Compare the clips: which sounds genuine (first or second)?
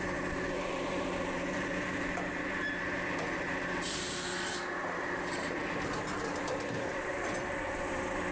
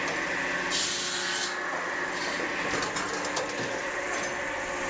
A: second